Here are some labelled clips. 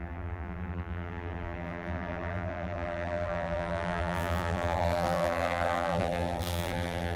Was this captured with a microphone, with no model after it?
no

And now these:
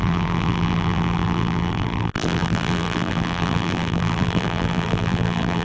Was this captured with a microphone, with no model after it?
no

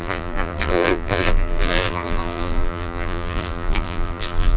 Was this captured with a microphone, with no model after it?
no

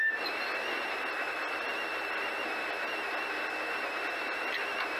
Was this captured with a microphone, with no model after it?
yes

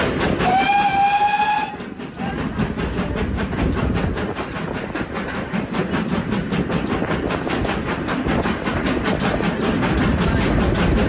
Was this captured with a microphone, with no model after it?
yes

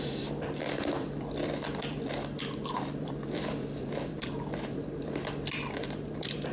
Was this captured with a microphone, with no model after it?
no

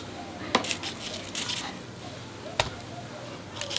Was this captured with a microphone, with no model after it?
yes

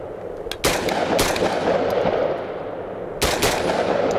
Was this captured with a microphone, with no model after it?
yes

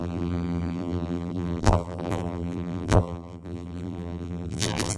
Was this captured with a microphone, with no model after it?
no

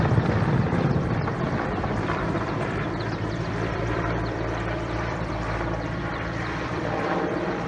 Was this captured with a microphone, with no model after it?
no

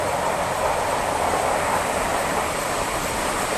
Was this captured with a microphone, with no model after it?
no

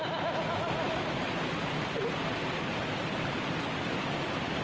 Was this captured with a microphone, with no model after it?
yes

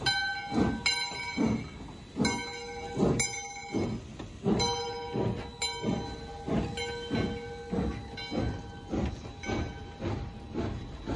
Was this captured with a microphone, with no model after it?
yes